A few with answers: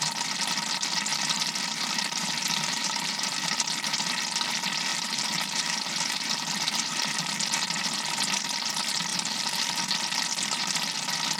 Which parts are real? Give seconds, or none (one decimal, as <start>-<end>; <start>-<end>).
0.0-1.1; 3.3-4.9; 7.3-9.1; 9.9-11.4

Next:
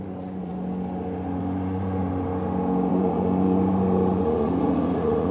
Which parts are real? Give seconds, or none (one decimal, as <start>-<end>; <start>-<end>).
0.5-1.4; 2.0-2.9

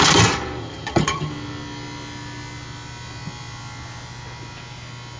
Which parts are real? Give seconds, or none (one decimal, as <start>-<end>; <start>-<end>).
0.0-0.6; 1.3-5.2